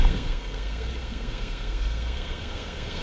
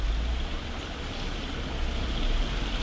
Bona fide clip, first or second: second